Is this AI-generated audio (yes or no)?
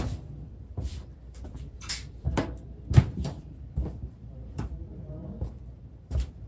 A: yes